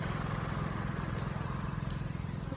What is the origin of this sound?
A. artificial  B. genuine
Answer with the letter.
B